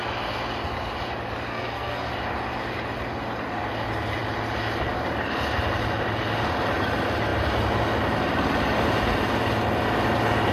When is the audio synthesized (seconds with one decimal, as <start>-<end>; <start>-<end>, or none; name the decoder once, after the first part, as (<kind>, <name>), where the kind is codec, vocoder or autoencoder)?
1.5-2.1 (codec, SNAC)